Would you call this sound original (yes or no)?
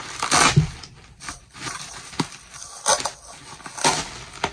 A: yes